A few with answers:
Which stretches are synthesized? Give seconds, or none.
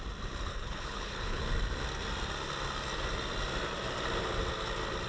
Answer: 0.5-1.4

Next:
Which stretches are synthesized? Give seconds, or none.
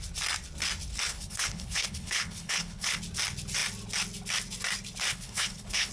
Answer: 1.1-3.0; 5.1-5.9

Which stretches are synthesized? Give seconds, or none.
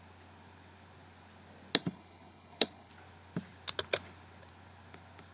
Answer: 1.8-2.9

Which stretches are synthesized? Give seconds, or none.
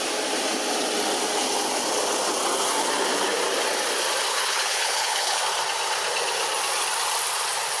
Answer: 4.3-5.4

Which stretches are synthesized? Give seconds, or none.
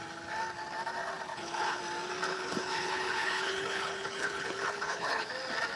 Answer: 1.3-1.8; 2.3-5.3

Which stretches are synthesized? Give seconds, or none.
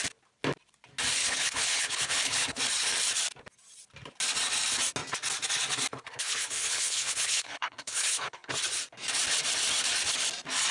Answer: 1.2-2.6; 5.9-8.5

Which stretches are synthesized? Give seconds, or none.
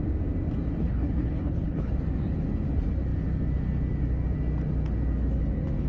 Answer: 0.8-1.9